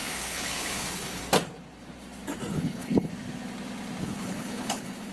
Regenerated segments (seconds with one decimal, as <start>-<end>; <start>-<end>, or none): 0.0-1.2; 2.5-3.1; 4.0-5.1